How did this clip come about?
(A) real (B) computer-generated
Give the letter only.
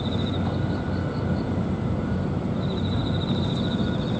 B